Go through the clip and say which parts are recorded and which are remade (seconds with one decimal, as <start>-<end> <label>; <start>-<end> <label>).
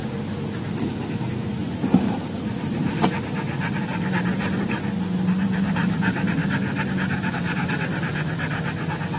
0.0-4.3 remade; 4.3-5.3 recorded; 5.3-6.4 remade; 6.4-7.3 recorded; 7.3-9.2 remade